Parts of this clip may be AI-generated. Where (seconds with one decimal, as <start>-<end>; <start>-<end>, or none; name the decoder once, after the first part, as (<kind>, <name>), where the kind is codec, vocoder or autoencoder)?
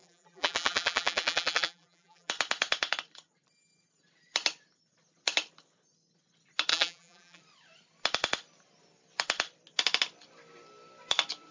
0.0-2.3 (vocoder, BigVGAN v2); 6.7-7.4